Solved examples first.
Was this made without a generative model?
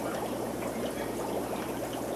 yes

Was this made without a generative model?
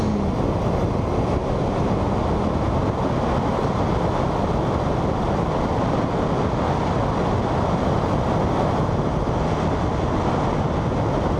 yes